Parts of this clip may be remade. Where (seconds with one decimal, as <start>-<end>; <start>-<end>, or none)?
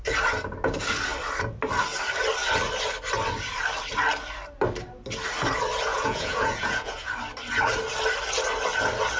5.9-7.1